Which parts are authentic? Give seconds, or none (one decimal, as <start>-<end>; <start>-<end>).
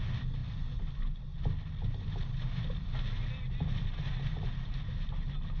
0.4-0.9; 1.3-3.6